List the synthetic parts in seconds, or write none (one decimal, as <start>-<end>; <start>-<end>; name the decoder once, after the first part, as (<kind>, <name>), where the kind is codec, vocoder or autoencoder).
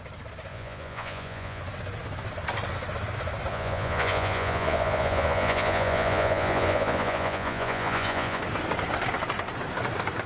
0.5-1.6 (vocoder, Vocos); 3.5-8.4